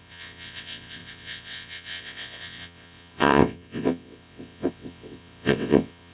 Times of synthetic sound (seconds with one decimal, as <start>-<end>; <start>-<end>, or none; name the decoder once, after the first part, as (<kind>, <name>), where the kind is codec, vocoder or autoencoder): 0.0-6.1 (vocoder, WaveNeXt)